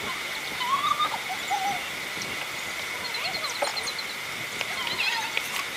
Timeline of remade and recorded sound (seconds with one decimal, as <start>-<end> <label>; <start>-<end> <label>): 0.0-5.8 recorded